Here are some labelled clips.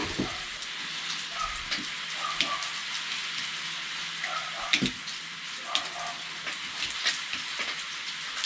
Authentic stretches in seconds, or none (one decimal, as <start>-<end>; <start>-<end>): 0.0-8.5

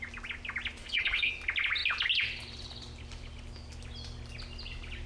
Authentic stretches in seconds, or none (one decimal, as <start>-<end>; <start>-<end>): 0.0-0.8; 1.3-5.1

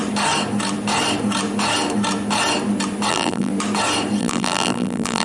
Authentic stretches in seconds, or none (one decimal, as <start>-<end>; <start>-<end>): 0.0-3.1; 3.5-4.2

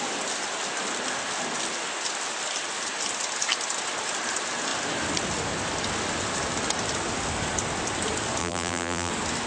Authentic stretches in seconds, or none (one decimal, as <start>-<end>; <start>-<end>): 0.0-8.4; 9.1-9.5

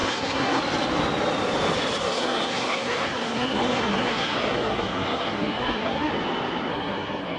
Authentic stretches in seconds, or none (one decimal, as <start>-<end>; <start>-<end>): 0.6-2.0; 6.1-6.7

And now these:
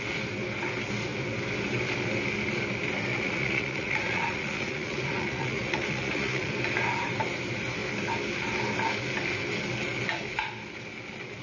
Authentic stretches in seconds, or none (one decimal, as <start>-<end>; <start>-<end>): 0.0-3.1; 6.5-11.4

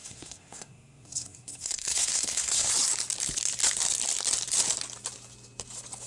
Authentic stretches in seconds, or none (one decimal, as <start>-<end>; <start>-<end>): 2.7-6.1